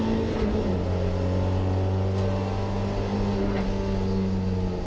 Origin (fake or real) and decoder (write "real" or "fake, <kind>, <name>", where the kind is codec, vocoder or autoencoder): real